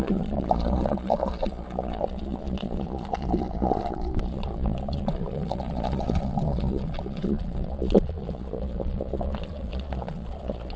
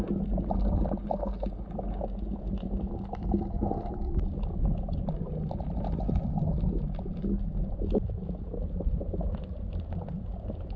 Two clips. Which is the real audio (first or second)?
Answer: second